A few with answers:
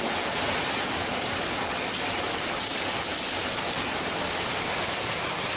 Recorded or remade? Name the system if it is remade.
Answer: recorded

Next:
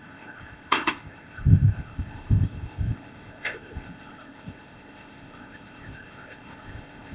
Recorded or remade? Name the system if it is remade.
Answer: remade, codec, ZipCodec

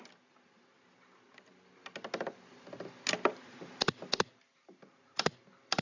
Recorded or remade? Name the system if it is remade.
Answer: recorded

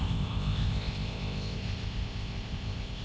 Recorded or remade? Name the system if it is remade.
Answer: remade, codec, ZipCodec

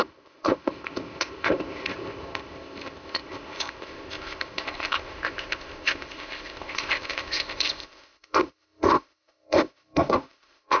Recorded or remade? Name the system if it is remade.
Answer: remade, codec, ZipCodec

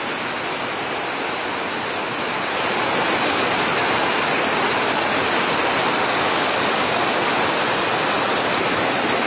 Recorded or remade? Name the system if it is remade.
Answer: recorded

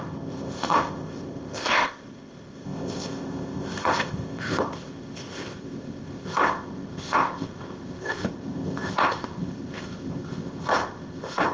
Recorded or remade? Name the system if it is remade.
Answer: remade, codec, ZipCodec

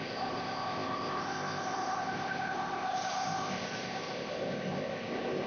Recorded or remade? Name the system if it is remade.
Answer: remade, codec, ZipCodec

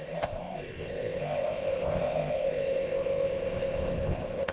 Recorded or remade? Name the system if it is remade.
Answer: remade, codec, ZipCodec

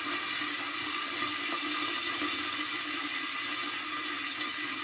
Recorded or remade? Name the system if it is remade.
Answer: recorded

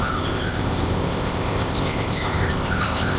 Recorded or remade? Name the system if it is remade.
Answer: remade, codec, ZipCodec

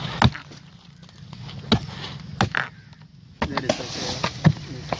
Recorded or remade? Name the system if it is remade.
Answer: recorded